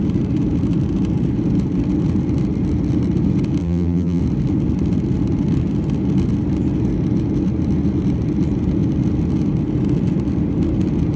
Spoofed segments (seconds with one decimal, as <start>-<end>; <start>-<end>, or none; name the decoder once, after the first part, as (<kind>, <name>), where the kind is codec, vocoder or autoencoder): 3.6-4.2 (vocoder, BigVGAN v2)